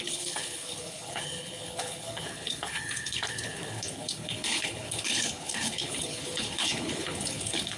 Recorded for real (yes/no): no